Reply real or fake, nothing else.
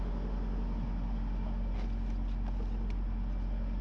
real